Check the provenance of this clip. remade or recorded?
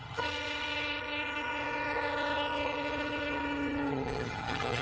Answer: remade